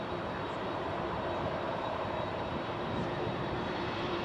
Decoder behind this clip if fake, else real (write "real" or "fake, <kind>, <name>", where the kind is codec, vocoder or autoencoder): fake, vocoder, BigVGAN v2